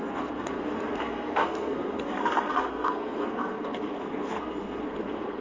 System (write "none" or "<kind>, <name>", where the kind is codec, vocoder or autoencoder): codec, SNAC